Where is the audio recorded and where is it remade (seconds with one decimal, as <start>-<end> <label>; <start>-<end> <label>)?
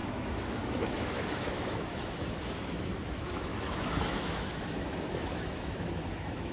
0.0-6.5 remade